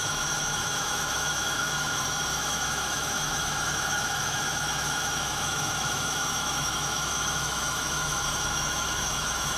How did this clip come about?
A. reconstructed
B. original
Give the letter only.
A